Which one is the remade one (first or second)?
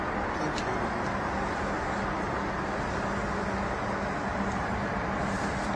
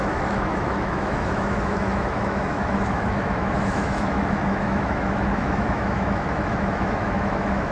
second